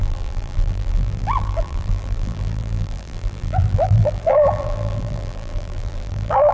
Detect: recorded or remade remade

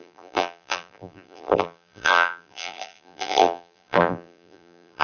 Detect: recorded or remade remade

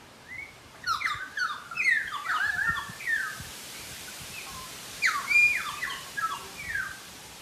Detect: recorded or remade remade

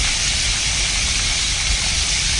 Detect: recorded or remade recorded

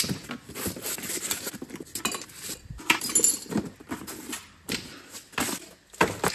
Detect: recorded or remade recorded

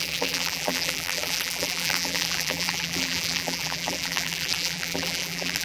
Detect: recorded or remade remade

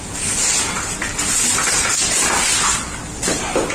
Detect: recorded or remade recorded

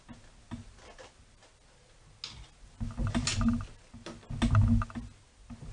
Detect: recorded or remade recorded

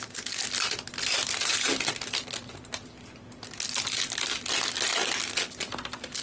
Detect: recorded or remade recorded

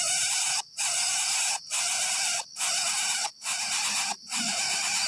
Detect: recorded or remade recorded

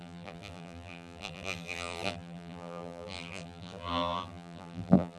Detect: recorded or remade remade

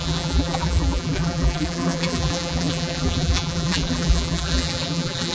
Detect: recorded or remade remade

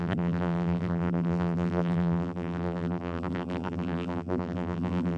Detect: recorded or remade remade